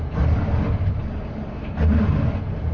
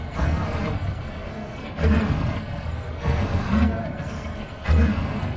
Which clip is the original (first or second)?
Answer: first